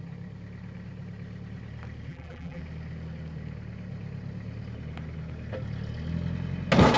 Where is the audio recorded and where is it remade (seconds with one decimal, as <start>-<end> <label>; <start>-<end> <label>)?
0.0-2.1 recorded; 2.1-2.6 remade; 2.6-7.0 recorded